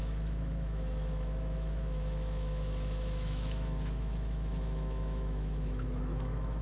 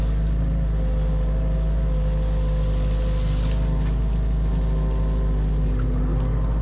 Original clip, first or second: second